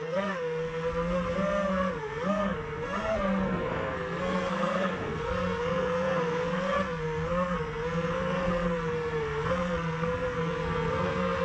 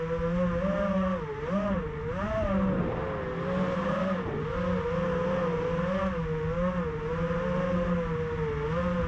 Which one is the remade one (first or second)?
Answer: first